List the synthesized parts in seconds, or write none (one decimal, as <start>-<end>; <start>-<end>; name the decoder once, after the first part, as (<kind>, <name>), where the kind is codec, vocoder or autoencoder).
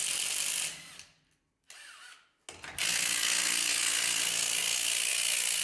none